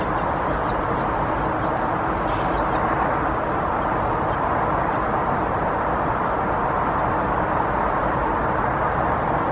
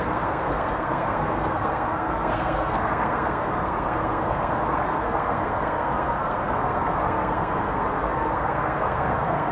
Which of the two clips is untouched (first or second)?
first